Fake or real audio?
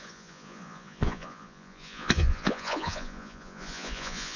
fake